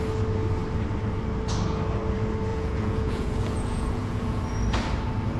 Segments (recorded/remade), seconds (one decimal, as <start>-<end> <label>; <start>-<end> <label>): 0.0-2.5 recorded; 2.5-4.4 remade; 4.4-5.4 recorded